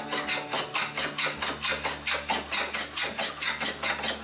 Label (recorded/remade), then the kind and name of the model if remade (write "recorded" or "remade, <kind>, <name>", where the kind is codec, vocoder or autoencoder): recorded